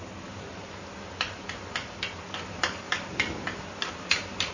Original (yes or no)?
yes